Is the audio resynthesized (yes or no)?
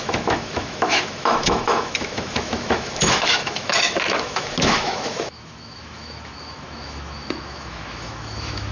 yes